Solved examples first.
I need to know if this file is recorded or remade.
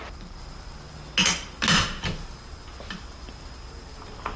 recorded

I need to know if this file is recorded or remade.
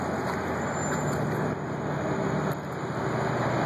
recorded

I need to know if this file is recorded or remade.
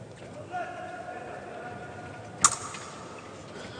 recorded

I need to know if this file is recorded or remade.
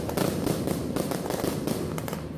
recorded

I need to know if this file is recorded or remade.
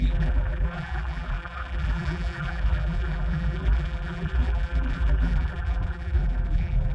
remade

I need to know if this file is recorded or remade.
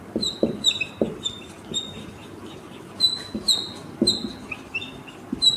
recorded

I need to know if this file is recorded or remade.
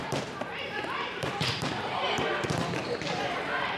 remade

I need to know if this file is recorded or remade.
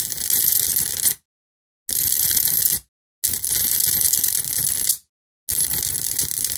recorded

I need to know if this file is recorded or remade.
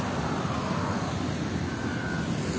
recorded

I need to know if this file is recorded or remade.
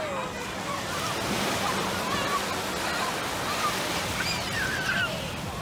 recorded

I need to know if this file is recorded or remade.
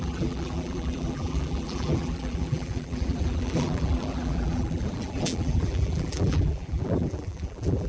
remade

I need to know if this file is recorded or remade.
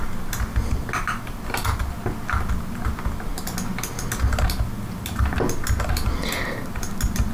recorded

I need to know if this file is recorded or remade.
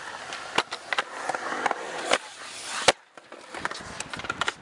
recorded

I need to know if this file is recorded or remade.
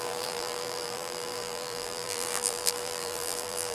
remade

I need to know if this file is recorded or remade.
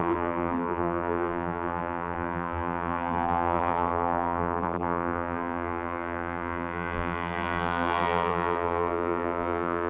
remade